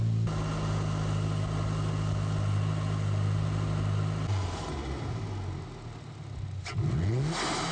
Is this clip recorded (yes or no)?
yes